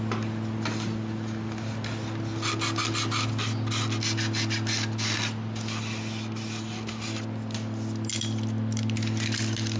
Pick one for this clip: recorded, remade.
recorded